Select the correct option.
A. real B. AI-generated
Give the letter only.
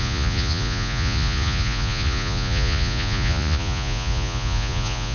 B